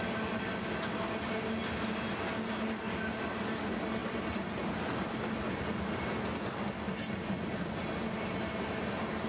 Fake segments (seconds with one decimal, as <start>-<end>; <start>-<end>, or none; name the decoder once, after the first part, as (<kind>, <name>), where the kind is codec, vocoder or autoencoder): none